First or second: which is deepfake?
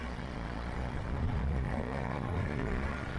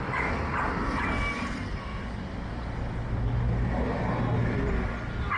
first